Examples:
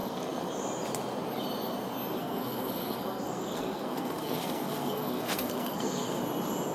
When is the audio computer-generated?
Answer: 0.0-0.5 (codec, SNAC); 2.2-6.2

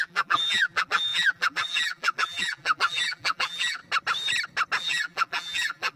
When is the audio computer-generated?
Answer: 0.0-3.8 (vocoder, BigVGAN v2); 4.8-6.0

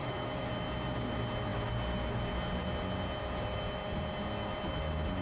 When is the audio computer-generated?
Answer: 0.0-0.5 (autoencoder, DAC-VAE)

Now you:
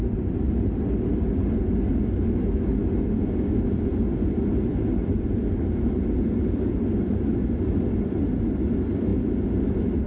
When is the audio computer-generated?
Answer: none

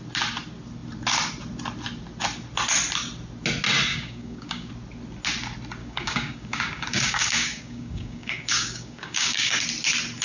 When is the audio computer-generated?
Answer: 3.9-4.7 (codec, DAC); 5.8-9.6